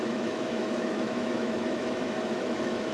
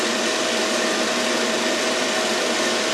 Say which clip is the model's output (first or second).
first